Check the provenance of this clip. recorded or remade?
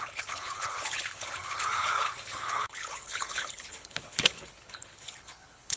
remade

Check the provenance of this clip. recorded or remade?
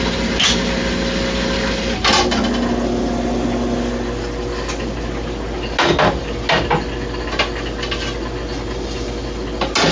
recorded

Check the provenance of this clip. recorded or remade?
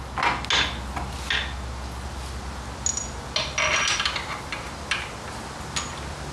recorded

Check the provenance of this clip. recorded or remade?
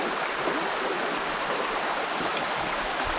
recorded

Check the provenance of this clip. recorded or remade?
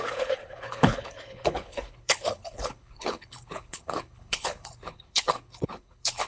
remade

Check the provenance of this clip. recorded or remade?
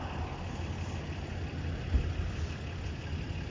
recorded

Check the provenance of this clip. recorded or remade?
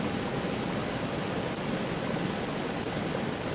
recorded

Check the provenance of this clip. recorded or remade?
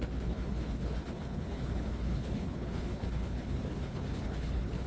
remade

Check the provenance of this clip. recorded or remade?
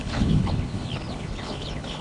remade